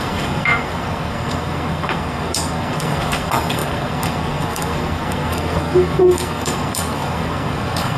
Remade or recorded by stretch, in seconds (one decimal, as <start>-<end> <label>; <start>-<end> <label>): 0.0-8.0 remade